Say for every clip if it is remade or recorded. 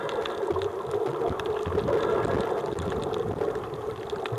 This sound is recorded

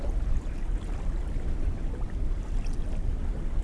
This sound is recorded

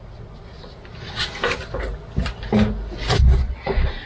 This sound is recorded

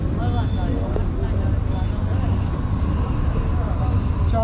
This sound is recorded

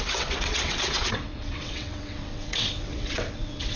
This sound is remade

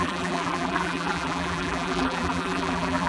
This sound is remade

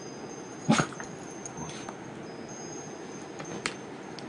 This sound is recorded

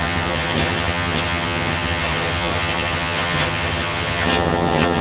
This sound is remade